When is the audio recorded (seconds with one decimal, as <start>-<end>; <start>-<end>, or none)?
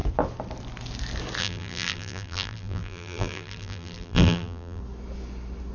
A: 0.0-1.4; 4.8-5.7